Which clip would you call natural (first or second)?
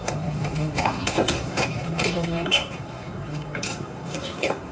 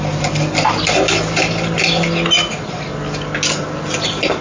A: second